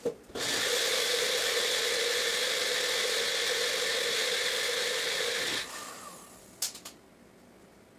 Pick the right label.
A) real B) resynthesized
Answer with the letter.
A